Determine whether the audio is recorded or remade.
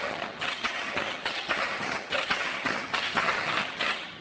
remade